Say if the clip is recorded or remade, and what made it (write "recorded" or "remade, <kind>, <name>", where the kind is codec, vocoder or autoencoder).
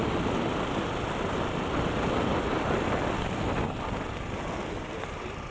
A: recorded